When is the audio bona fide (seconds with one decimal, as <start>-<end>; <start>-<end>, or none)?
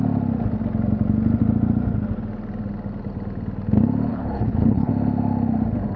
0.0-4.1; 4.9-6.0